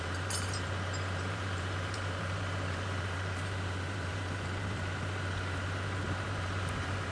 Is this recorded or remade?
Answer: remade